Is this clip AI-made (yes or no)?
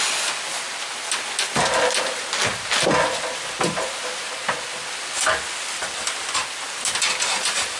no